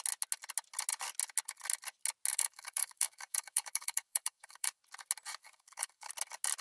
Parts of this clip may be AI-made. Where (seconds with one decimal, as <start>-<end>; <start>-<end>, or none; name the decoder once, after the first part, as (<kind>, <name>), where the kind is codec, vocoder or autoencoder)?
2.3-4.8 (codec, DAC); 5.4-6.1